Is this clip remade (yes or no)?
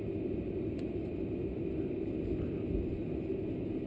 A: no